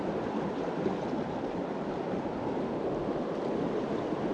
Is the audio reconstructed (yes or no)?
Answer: no